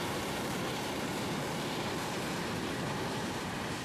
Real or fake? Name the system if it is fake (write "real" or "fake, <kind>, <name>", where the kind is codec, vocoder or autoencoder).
fake, vocoder, BigVGAN v2